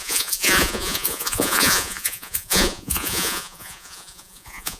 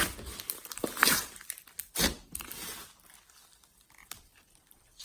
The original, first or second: second